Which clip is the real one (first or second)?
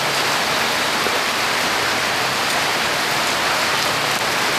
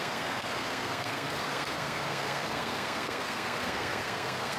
first